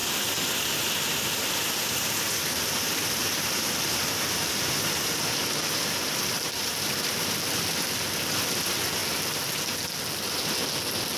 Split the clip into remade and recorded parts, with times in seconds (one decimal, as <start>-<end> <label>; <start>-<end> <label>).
0.0-1.2 recorded; 1.2-9.0 remade; 9.0-11.2 recorded